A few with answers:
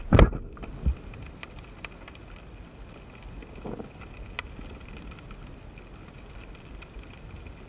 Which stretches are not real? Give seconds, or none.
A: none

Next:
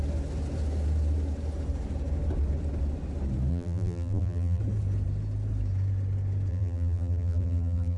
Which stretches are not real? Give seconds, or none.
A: 3.5-4.6; 6.5-8.0

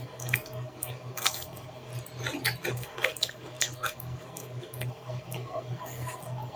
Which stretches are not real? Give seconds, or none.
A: 0.0-1.9; 2.7-6.6

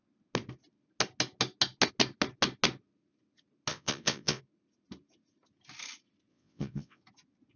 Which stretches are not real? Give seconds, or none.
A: 3.7-4.4; 6.3-7.0

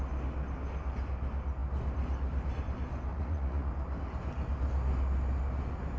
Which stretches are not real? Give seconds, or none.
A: 3.1-3.7

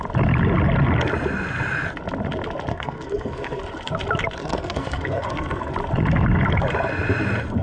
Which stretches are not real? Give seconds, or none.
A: 2.7-3.6; 4.4-5.7